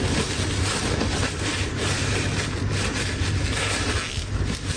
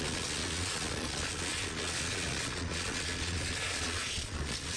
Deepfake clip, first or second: second